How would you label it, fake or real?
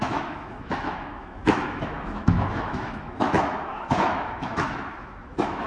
fake